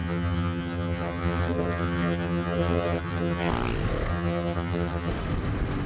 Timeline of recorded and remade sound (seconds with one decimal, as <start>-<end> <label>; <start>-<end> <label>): 0.0-3.5 remade; 3.5-4.1 recorded; 4.1-5.1 remade; 5.1-5.9 recorded